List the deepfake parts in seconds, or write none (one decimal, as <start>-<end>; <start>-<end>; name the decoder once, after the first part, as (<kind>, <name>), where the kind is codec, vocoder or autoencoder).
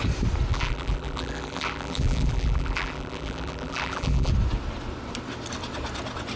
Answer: 0.5-4.3 (vocoder, BigVGAN v2)